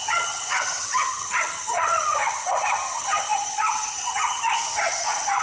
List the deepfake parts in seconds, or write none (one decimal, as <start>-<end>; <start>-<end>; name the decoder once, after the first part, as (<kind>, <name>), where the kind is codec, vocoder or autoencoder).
0.0-5.4 (vocoder, HiFi-GAN)